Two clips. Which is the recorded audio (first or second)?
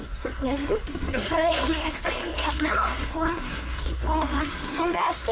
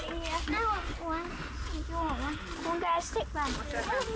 second